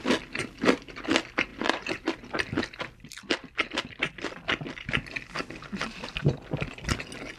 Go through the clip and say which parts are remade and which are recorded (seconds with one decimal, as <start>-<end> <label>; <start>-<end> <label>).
0.0-1.5 recorded; 1.5-4.7 remade; 4.7-7.4 recorded